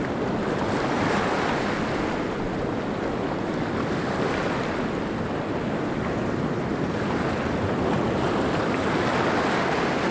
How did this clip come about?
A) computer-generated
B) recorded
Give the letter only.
B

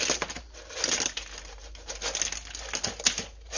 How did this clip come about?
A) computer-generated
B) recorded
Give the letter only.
B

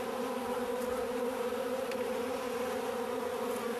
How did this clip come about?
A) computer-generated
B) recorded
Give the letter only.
B